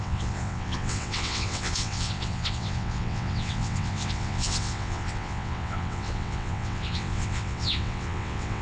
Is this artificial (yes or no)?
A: yes